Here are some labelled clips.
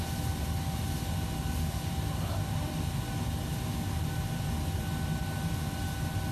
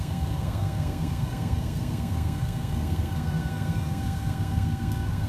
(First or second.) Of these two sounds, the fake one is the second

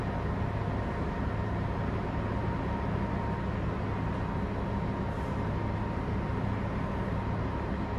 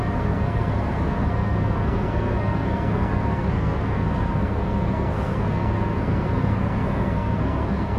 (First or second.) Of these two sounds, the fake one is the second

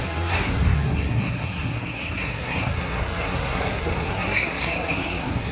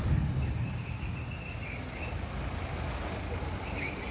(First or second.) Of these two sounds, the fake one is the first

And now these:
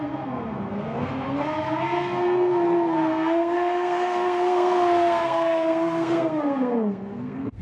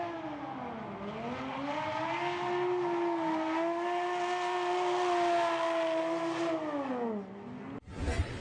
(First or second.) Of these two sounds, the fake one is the first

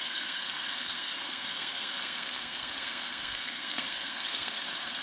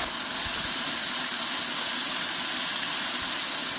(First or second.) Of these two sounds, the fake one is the first